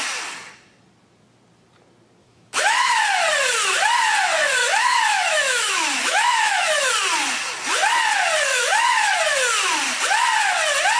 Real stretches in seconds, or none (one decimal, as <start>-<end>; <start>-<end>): 0.0-2.2; 2.9-4.6; 6.9-8.5; 9.2-11.0